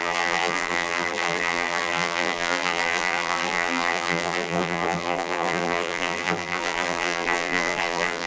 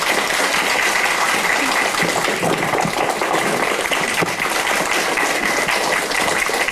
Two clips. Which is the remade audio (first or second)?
first